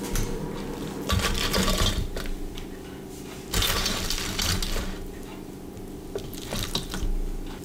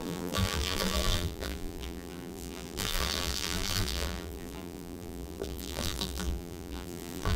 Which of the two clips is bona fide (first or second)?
first